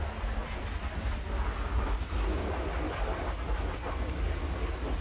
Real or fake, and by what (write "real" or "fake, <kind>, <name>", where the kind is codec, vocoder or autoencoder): real